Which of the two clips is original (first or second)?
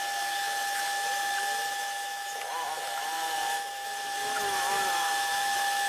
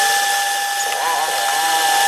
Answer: second